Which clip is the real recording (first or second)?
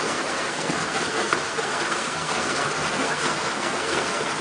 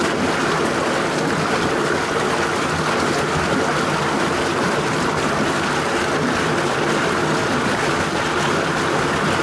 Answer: second